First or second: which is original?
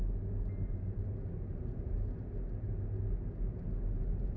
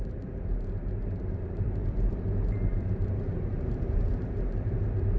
first